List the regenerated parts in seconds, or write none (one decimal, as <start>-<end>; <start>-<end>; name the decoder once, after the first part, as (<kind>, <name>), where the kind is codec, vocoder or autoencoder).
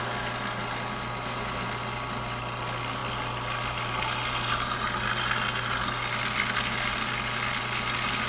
none